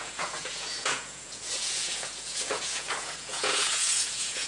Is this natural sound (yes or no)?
no